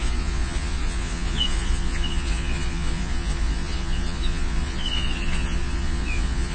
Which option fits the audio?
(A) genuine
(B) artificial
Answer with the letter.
B